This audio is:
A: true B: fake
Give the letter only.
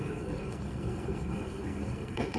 B